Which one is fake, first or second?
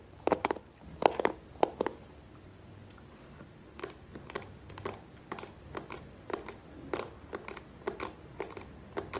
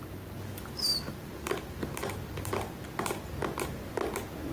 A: first